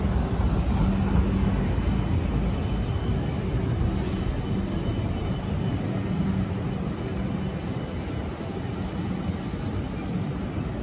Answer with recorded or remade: recorded